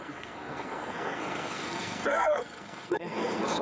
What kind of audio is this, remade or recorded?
remade